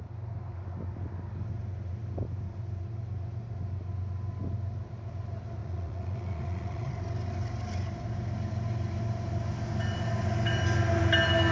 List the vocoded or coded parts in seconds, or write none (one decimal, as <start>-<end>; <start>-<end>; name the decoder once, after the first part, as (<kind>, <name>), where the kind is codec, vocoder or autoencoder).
5.6-6.9 (vocoder, Vocos)